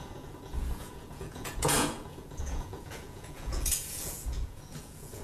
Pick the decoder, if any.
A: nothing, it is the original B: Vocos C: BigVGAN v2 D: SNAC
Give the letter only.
B